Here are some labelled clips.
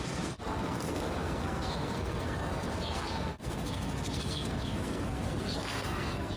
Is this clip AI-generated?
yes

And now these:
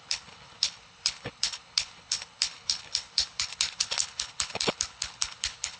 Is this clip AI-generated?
yes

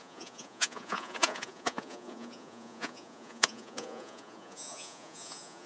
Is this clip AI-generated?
yes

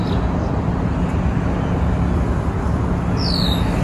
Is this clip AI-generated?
no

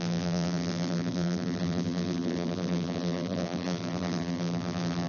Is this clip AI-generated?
yes